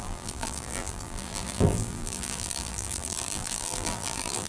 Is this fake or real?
fake